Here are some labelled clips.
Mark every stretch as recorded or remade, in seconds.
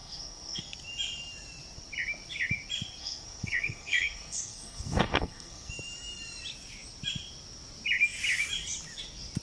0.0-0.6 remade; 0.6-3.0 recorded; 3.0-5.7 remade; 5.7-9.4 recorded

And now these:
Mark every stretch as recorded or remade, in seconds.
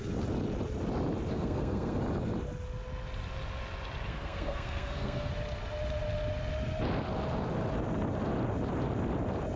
0.0-1.3 recorded; 1.3-2.0 remade; 2.0-4.1 recorded; 4.1-5.3 remade; 5.3-9.6 recorded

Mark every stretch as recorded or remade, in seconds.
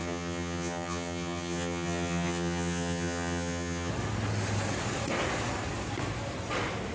0.0-3.9 remade; 3.9-6.9 recorded